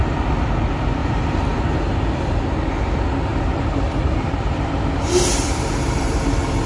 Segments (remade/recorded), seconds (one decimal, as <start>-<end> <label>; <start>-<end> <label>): 0.0-1.0 recorded; 1.0-2.4 remade; 2.4-3.3 recorded; 3.3-6.7 remade